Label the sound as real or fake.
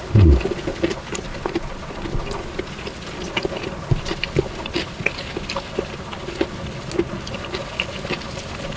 real